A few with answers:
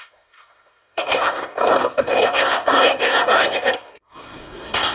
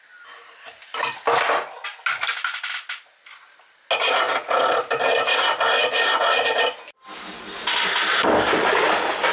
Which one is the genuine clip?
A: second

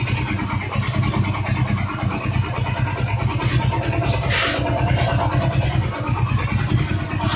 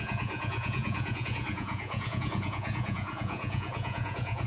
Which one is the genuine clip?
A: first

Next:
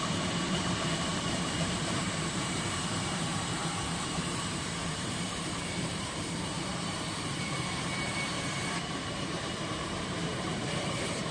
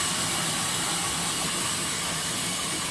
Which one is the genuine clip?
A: second